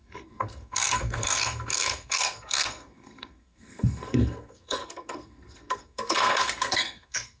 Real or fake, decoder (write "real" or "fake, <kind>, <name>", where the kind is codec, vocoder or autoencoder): fake, codec, SNAC